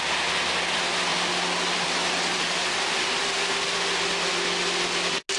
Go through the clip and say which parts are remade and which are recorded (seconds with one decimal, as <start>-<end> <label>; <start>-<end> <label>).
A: 0.0-5.4 recorded